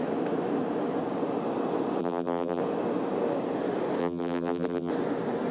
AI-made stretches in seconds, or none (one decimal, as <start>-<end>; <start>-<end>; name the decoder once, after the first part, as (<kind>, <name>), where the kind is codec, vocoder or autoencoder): 2.0-2.6 (vocoder, BigVGAN v2); 4.0-4.9